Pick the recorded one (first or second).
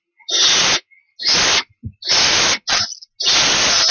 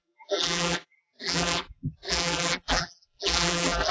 first